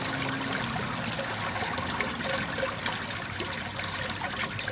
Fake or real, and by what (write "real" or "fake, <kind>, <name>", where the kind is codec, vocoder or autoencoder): real